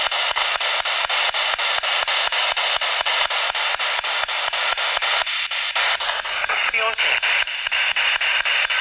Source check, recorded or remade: recorded